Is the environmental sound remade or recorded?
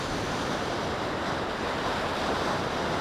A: remade